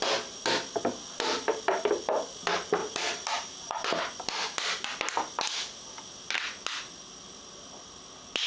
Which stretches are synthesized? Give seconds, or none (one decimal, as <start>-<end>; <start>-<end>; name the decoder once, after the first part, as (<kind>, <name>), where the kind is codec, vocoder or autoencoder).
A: 2.8-4.0 (vocoder, BigVGAN v2)